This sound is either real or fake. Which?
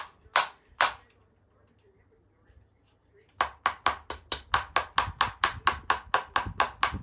real